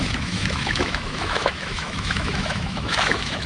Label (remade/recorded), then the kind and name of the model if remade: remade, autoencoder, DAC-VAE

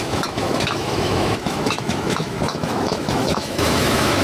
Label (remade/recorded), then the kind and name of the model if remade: remade, autoencoder, DAC-VAE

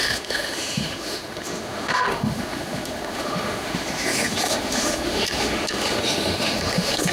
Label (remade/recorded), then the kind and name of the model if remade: remade, autoencoder, DAC-VAE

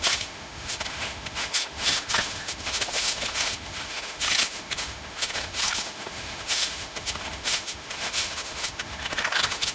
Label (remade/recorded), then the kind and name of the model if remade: remade, autoencoder, DAC-VAE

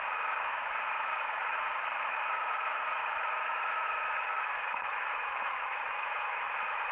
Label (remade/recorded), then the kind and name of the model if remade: remade, autoencoder, DAC-VAE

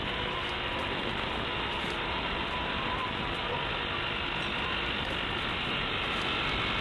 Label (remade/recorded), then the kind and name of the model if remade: recorded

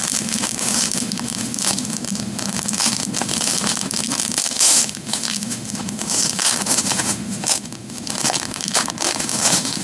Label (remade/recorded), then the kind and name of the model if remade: remade, autoencoder, DAC-VAE